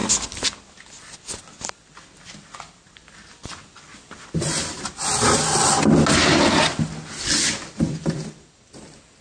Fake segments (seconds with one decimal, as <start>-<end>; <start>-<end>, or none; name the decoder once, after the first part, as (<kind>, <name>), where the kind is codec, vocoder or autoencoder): none

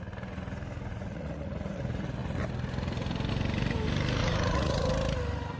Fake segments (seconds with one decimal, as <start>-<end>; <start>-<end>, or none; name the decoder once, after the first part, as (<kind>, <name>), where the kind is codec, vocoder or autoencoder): 0.9-1.8 (vocoder, Vocos); 4.2-4.9

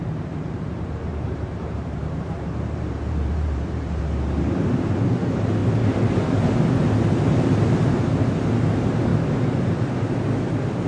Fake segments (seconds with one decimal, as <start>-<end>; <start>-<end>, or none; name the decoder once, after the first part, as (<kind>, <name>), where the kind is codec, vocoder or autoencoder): 0.0-4.0 (vocoder, BigVGAN v2)